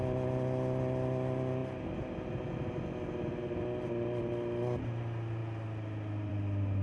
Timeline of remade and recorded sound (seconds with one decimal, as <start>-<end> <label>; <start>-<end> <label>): 0.0-6.8 recorded